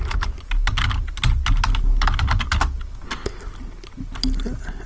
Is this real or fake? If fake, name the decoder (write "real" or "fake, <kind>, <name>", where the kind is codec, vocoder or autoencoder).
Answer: real